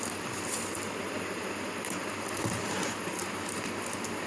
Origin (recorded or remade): recorded